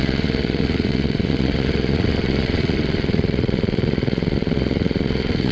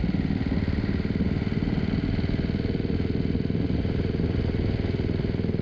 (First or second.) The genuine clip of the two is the second